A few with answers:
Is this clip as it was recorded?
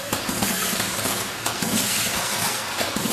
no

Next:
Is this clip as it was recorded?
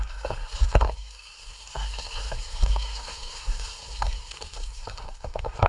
no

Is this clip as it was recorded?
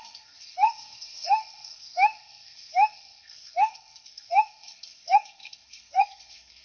no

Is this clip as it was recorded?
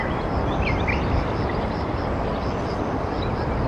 yes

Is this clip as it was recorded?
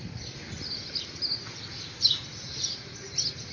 yes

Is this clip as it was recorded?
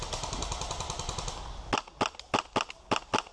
yes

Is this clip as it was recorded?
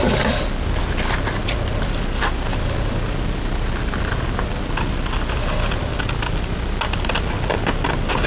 yes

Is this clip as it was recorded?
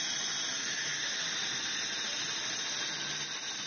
yes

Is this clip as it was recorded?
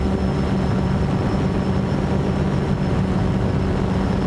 yes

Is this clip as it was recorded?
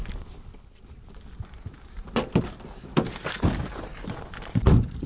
yes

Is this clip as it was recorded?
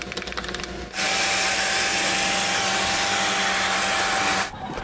yes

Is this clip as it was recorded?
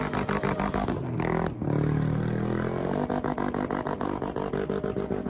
yes